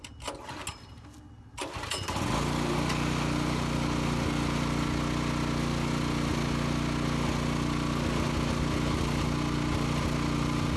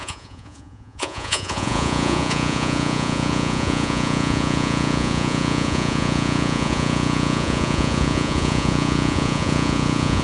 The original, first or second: first